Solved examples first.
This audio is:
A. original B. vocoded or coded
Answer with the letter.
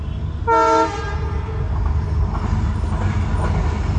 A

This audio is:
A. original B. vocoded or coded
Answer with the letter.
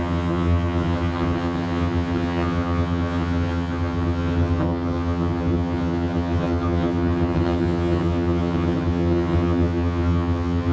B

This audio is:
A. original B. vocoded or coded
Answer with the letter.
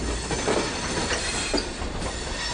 A